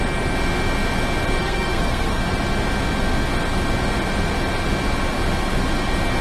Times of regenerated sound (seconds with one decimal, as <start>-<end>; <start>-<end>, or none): 1.4-2.2